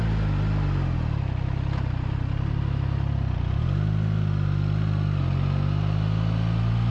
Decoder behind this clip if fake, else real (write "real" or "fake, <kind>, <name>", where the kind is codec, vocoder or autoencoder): real